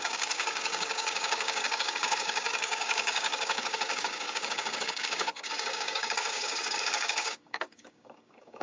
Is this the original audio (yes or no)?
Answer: no